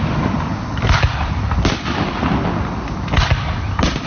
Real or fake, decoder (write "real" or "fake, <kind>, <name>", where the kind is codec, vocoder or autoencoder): real